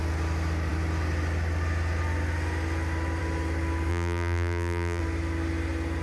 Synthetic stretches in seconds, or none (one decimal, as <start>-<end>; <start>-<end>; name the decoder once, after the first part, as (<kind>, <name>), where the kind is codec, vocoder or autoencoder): 3.9-5.0 (vocoder, BigVGAN v2)